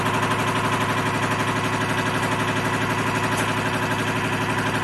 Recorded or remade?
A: recorded